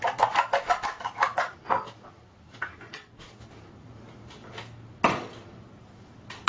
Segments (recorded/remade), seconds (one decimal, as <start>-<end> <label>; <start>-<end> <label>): 0.0-6.5 recorded